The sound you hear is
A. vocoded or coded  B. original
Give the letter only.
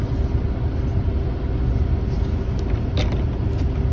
B